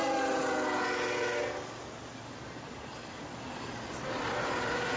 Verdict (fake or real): real